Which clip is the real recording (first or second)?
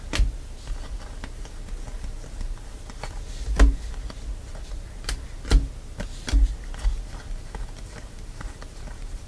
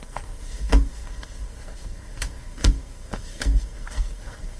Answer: first